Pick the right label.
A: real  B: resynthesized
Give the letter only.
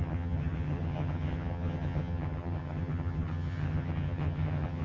B